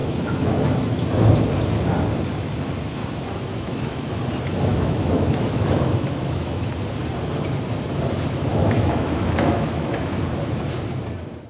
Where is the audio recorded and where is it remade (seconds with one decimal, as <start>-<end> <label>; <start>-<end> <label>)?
0.0-1.3 remade; 1.3-3.0 recorded; 3.0-4.1 remade; 4.1-4.7 recorded; 4.7-6.7 remade; 6.7-8.5 recorded; 8.5-10.2 remade; 10.2-11.5 recorded